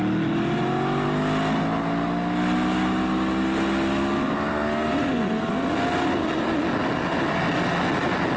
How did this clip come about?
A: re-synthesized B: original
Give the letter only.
B